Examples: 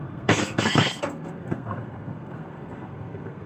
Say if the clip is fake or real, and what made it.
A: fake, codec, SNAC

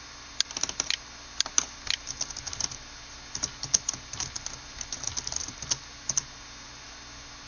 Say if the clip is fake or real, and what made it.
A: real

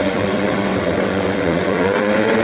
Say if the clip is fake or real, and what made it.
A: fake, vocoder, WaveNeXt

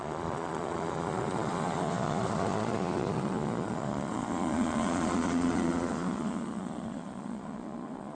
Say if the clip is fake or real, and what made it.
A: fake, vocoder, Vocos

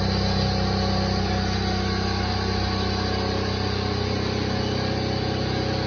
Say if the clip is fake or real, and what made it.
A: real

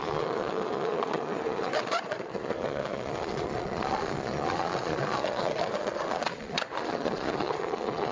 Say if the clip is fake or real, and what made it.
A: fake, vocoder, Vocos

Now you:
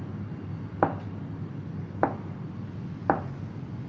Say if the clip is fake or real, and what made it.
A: real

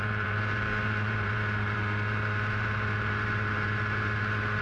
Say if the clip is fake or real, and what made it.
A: fake, vocoder, BigVGAN v2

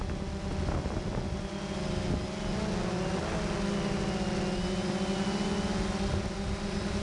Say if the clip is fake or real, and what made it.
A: real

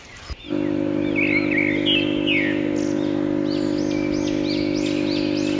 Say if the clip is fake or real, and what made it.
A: real